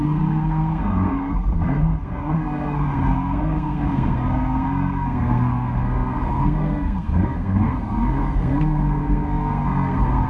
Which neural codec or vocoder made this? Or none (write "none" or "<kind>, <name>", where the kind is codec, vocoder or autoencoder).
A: codec, SNAC